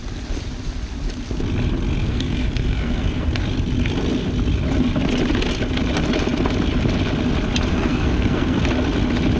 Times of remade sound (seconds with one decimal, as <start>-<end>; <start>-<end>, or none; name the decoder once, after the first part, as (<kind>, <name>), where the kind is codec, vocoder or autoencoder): 2.0-3.4 (codec, SNAC); 7.7-8.6